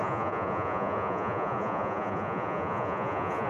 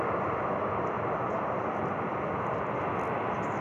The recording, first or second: second